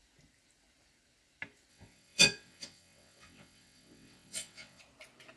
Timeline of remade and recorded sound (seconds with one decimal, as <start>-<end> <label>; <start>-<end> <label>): 0.0-1.7 recorded; 1.7-4.8 remade; 4.8-5.4 recorded